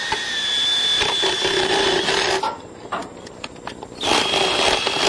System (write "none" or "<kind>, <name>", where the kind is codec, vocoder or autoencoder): none